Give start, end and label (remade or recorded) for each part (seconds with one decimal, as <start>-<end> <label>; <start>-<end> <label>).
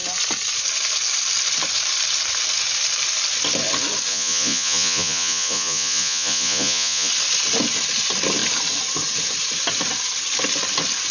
0.0-4.1 recorded; 4.1-7.1 remade; 7.1-11.1 recorded